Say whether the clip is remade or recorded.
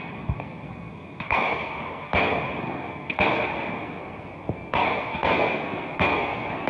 remade